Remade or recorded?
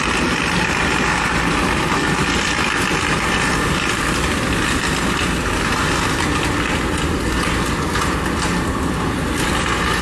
recorded